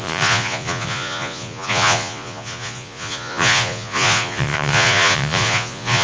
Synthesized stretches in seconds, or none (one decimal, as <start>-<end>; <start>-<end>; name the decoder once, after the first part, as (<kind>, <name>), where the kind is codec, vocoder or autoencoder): 0.0-6.0 (vocoder, Vocos)